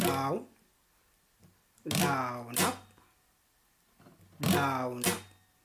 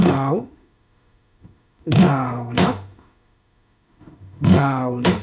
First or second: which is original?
first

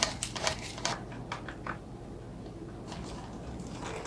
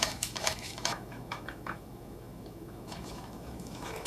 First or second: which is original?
first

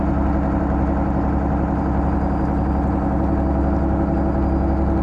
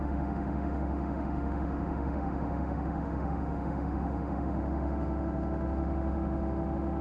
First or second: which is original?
first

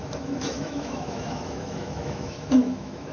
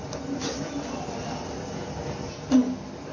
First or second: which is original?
second